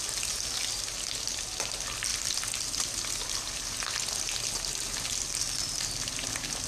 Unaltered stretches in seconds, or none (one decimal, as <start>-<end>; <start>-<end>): 0.0-6.7